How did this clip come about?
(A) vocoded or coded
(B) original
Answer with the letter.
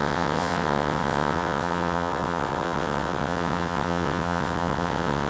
A